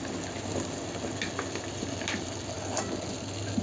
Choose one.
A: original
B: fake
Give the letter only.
A